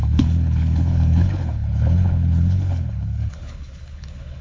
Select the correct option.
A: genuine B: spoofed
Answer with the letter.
B